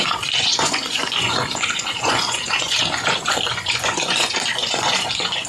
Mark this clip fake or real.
fake